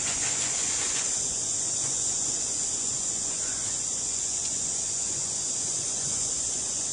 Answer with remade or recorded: remade